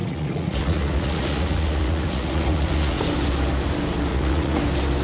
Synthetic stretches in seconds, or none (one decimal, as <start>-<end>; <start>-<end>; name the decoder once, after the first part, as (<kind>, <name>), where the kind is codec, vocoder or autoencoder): 0.0-3.0 (vocoder, Vocos); 4.1-4.6